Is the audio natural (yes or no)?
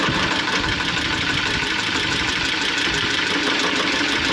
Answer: yes